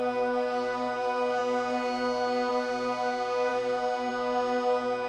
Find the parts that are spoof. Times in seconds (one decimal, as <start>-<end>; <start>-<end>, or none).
none